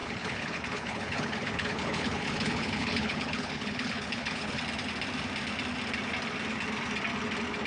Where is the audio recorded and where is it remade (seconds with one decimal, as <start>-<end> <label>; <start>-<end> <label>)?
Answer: 0.0-4.6 remade; 4.6-7.7 recorded